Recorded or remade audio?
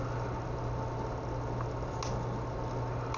recorded